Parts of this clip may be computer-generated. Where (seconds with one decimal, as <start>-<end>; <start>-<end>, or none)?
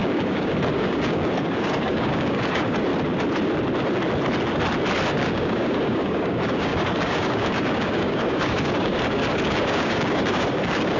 0.0-2.9; 5.1-11.0